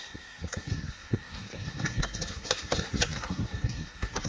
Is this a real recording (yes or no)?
no